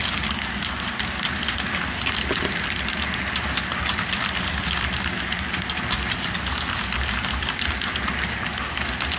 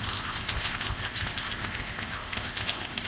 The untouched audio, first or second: first